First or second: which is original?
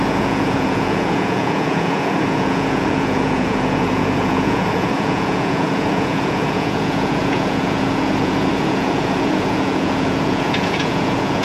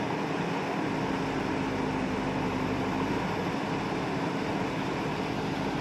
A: second